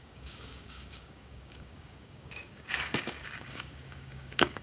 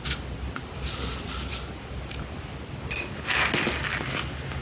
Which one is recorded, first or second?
second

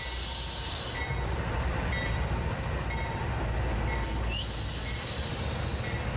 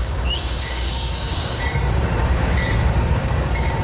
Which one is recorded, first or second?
first